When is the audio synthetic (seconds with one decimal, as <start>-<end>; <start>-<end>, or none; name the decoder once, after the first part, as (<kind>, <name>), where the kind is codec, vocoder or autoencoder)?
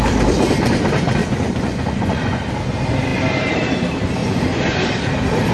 1.2-2.5 (vocoder, Vocos); 4.2-4.8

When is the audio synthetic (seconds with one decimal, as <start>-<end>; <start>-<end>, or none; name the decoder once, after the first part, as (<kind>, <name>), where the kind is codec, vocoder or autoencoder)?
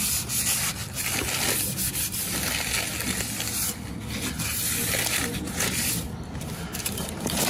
4.8-7.5 (vocoder, BigVGAN v2)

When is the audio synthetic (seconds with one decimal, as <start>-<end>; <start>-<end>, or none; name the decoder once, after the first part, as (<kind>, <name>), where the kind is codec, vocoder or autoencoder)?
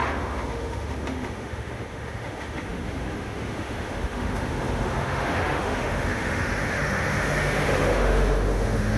0.0-9.0 (autoencoder, DAC-VAE)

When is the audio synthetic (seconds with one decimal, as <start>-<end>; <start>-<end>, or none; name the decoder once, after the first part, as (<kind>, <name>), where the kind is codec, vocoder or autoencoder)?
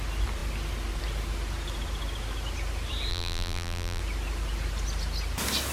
3.1-4.0 (vocoder, BigVGAN v2)